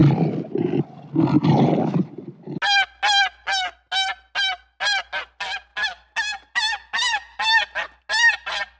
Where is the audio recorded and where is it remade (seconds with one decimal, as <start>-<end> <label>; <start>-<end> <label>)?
0.0-8.8 recorded